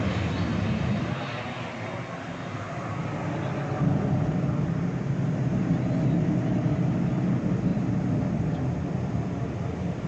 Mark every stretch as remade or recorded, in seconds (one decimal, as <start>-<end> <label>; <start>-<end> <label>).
0.0-10.1 recorded